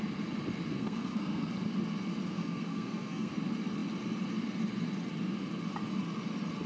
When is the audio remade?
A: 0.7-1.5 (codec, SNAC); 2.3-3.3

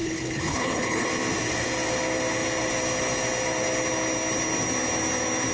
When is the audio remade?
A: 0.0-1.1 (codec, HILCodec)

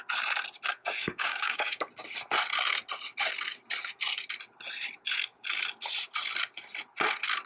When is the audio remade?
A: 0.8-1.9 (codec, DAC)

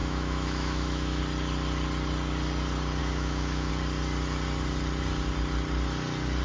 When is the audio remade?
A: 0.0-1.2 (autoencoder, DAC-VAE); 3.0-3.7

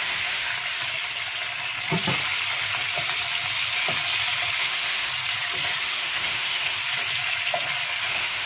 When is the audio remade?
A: 0.0-0.5 (autoencoder, DAC-VAE); 4.6-5.1; 5.8-6.8; 8.1-8.5